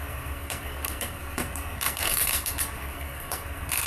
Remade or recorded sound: remade